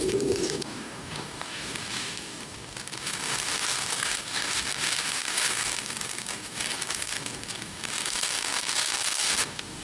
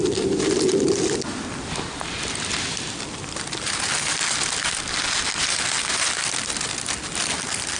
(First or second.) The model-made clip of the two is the first